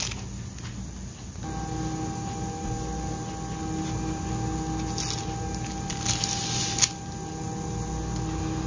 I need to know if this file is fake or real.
real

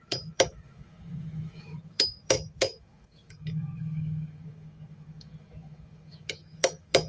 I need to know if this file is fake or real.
fake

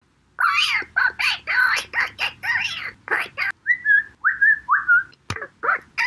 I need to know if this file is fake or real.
real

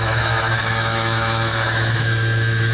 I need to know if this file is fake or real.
fake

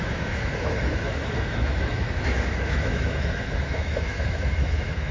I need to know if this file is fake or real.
fake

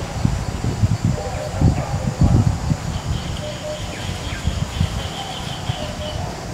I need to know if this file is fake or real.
real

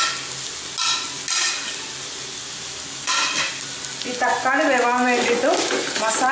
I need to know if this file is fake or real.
real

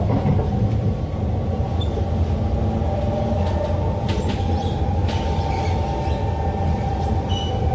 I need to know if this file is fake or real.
real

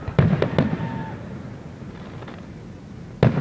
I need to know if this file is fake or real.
real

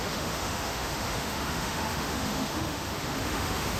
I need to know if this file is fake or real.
fake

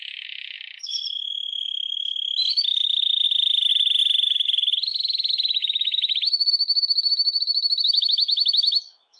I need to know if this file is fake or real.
fake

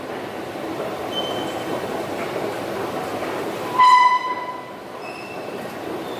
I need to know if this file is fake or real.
real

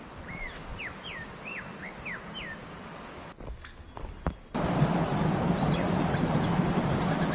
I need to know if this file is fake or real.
real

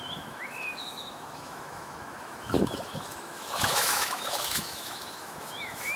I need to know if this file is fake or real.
fake